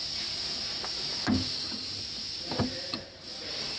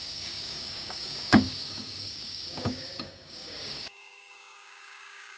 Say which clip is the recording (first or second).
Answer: first